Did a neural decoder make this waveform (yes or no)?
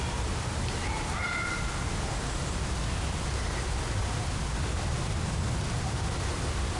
no